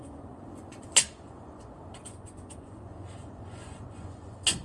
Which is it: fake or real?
fake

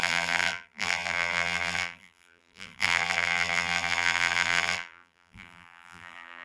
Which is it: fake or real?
fake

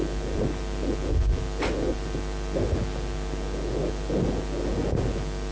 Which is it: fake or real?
real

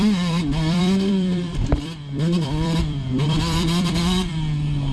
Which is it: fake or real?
fake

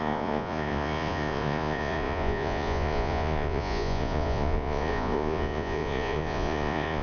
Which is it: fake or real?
fake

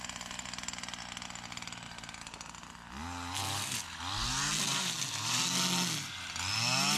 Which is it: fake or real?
real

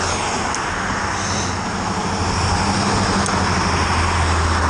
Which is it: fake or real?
real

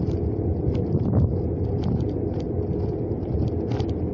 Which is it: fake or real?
real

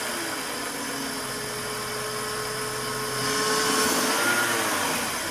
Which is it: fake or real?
real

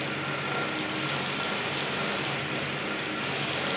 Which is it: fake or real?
real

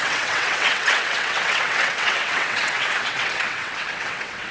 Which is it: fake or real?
fake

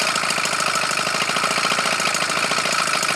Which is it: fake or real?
real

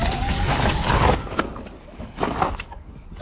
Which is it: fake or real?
fake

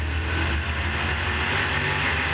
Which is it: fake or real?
real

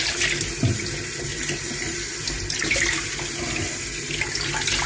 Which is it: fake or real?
real